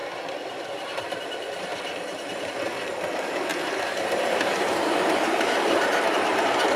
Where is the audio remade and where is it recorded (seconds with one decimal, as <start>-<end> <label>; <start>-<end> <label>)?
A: 0.0-0.7 recorded; 0.7-1.7 remade; 1.7-2.7 recorded; 2.7-3.5 remade; 3.5-4.2 recorded; 4.2-6.8 remade